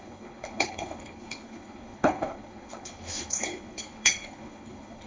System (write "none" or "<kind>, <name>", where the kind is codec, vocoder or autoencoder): codec, HILCodec